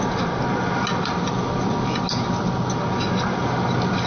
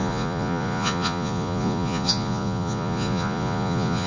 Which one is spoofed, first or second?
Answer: second